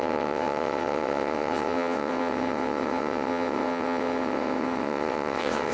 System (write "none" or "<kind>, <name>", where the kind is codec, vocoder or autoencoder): vocoder, WaveNeXt